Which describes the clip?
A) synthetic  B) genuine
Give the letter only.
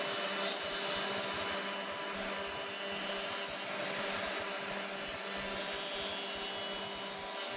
B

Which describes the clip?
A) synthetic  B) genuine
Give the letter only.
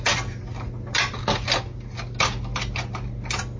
B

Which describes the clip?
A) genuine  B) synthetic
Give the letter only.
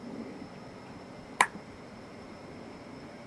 B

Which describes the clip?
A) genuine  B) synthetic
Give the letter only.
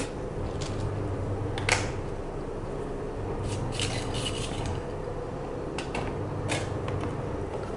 A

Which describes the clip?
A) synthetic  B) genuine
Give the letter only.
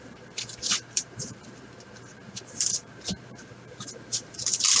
A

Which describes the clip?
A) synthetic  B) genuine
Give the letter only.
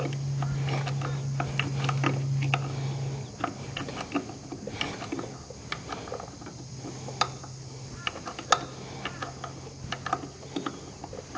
B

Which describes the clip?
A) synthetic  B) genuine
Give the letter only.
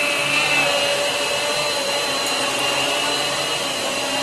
B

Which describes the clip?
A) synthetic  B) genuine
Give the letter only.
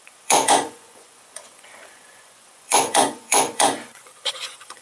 A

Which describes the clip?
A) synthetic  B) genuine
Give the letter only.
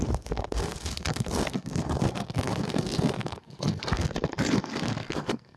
A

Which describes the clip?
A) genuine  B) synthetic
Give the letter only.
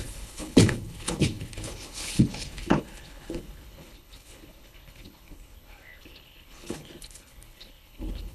B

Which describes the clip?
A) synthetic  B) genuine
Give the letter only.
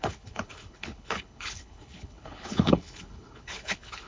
A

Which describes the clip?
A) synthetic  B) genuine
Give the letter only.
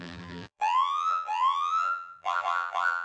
A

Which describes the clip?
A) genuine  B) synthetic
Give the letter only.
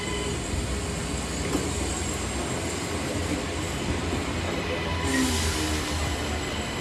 A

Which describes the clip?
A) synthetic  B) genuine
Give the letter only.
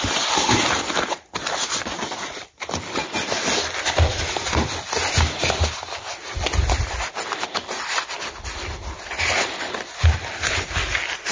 B